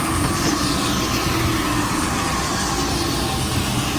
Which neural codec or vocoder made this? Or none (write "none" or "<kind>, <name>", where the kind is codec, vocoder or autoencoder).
none